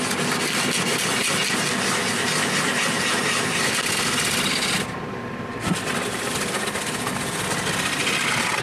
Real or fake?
real